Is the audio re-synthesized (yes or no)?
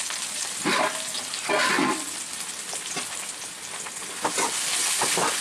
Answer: no